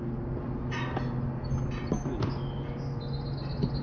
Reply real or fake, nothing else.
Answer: real